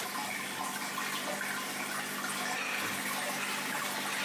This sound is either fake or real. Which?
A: real